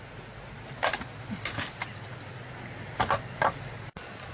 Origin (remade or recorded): recorded